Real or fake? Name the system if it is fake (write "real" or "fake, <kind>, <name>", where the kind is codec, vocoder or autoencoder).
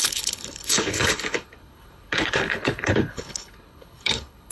fake, codec, HILCodec